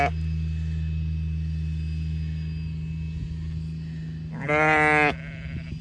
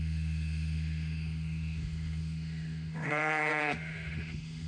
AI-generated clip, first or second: second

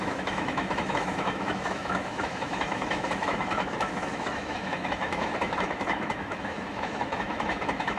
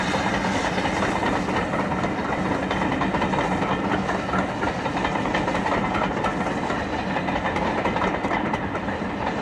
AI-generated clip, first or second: first